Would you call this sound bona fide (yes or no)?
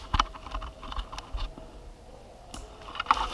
yes